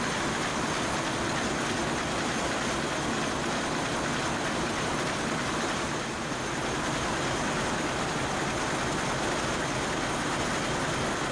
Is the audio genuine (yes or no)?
yes